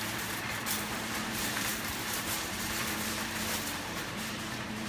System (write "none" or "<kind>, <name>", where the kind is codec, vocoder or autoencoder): vocoder, BigVGAN v2